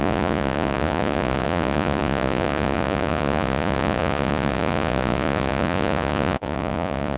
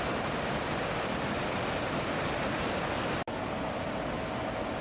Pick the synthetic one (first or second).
first